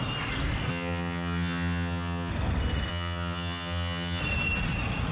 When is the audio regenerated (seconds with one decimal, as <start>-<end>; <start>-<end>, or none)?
0.7-2.3; 2.9-4.2